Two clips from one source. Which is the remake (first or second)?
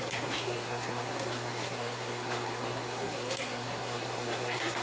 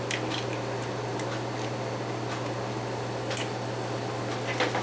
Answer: first